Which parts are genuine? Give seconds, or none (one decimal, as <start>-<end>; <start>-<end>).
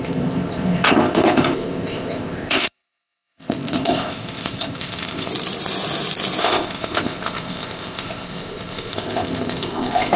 5.3-6.4